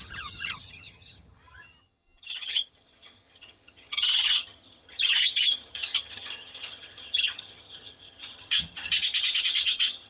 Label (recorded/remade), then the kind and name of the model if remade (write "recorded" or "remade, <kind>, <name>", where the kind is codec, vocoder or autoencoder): remade, vocoder, HiFi-GAN